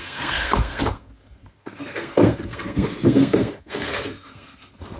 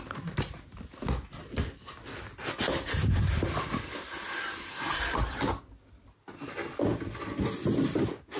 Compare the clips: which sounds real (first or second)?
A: second